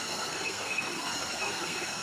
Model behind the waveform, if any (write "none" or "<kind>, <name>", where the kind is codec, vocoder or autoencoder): codec, SNAC